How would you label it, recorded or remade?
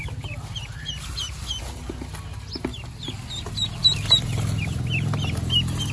recorded